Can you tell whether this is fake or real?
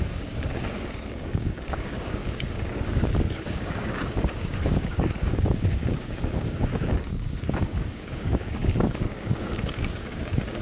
fake